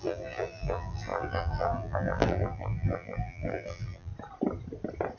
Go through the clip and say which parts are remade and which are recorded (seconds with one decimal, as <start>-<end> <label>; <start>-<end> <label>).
0.0-4.1 remade; 4.1-5.2 recorded